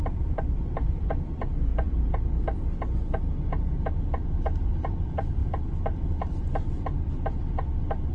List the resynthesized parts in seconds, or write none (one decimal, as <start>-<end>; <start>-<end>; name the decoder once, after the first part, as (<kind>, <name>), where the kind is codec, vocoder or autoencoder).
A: 0.0-1.7 (vocoder, BigVGAN v2); 3.9-8.1